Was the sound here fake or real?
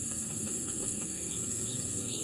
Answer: fake